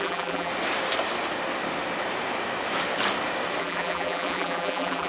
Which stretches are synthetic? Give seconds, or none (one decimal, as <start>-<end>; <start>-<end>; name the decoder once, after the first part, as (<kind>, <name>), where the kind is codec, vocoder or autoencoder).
0.0-0.5 (vocoder, BigVGAN v2); 3.6-5.1

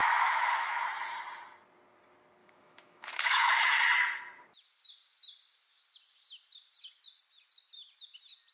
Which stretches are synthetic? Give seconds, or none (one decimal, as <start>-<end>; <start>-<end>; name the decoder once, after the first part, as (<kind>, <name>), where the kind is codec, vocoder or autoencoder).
0.0-0.8 (autoencoder, DAC-VAE); 2.4-3.8